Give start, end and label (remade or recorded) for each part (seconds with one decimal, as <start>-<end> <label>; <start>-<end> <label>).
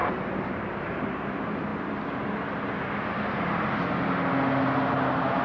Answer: 0.0-5.4 recorded